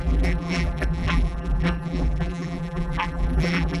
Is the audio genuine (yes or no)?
no